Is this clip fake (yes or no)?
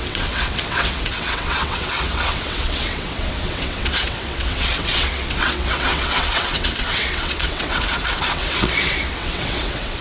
yes